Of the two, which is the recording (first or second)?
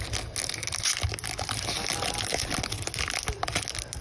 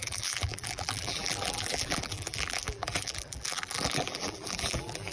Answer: first